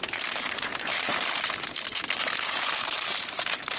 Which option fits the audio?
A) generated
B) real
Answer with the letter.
A